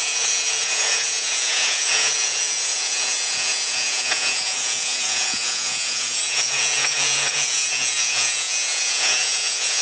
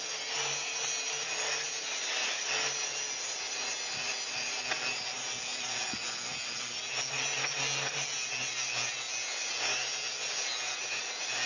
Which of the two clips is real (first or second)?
second